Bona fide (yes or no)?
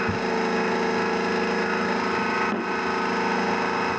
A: yes